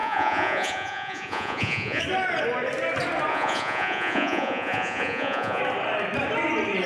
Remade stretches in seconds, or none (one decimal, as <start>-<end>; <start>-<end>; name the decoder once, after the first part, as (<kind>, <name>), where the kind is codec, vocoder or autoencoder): 0.0-2.0 (vocoder, Vocos); 3.3-5.6